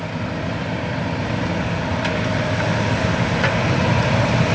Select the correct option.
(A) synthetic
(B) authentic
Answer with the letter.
A